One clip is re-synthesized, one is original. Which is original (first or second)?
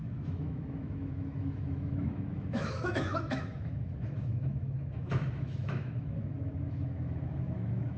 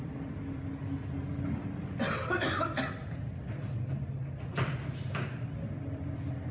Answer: second